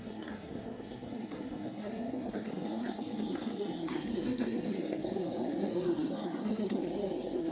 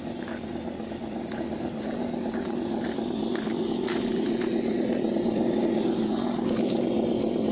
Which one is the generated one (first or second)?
first